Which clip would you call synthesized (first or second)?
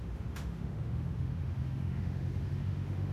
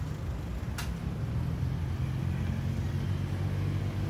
first